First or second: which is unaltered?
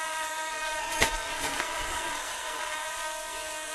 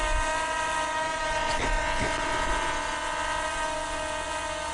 second